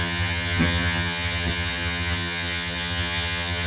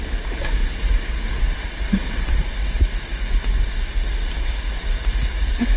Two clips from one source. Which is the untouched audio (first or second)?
second